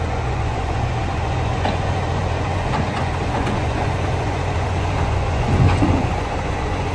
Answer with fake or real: fake